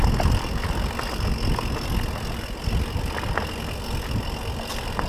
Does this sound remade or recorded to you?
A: recorded